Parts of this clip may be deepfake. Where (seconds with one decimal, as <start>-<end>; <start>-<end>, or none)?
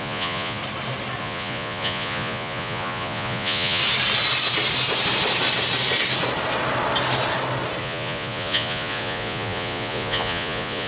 0.0-0.6; 1.2-3.8; 7.8-10.9